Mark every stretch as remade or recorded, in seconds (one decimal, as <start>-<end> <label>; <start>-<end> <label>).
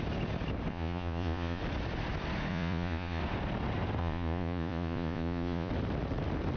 0.0-0.7 recorded; 0.7-1.6 remade; 1.6-2.5 recorded; 2.5-3.2 remade; 3.2-4.0 recorded; 4.0-5.7 remade; 5.7-6.6 recorded